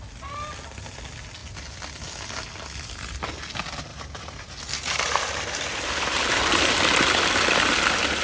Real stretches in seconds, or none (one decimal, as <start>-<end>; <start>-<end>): 0.0-3.9; 6.9-8.2